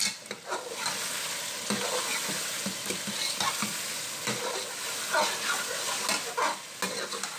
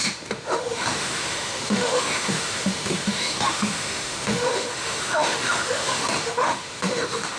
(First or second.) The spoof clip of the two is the second